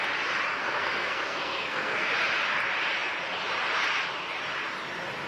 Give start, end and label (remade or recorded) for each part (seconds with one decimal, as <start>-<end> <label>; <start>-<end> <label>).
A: 0.0-0.6 recorded; 0.6-2.1 remade; 2.1-5.3 recorded